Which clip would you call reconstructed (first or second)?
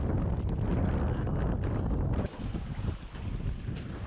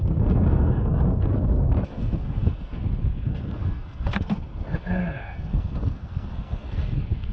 second